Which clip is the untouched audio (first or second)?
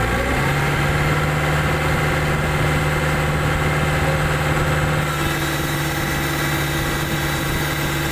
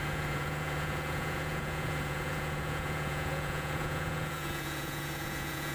first